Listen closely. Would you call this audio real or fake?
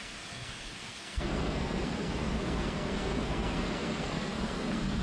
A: fake